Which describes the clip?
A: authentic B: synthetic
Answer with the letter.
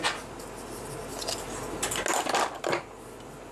A